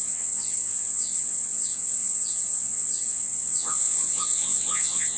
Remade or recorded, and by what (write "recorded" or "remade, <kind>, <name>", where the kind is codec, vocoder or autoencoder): remade, vocoder, WaveNeXt